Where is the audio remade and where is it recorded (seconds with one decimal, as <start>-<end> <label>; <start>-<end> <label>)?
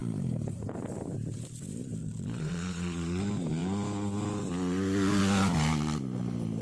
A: 0.0-2.0 recorded; 2.0-3.2 remade; 3.2-6.6 recorded